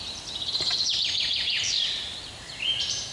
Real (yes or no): yes